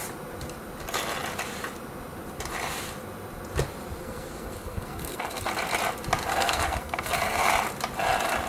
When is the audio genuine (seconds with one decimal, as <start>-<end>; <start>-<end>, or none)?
0.0-4.0; 5.5-6.3; 7.5-8.5